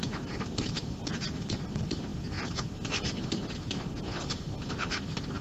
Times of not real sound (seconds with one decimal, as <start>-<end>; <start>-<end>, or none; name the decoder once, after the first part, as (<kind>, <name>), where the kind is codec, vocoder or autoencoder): none